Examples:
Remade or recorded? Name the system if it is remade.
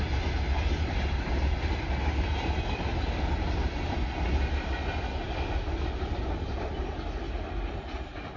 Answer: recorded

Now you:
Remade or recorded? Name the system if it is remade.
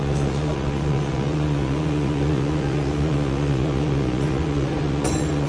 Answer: remade, vocoder, Vocos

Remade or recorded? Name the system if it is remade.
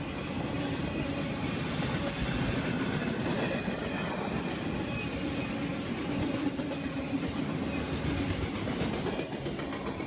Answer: recorded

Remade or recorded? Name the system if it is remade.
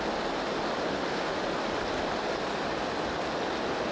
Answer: recorded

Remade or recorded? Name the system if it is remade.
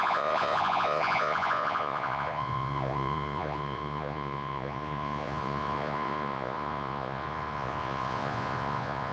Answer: remade, vocoder, Vocos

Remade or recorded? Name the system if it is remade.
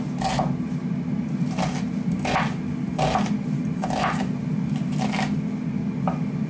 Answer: recorded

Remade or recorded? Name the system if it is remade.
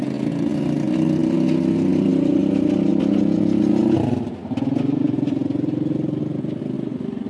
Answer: recorded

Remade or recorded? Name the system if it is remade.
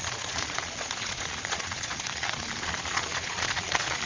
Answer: remade, vocoder, Vocos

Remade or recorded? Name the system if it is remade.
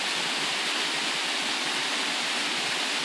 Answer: recorded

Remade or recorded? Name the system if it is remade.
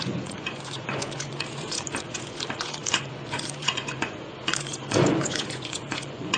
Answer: remade, vocoder, Vocos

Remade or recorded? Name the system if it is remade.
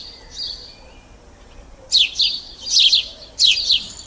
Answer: recorded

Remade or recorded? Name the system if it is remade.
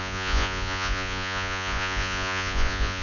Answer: remade, vocoder, Vocos